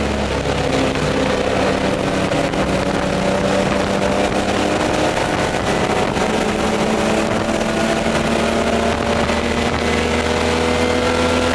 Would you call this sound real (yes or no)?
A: yes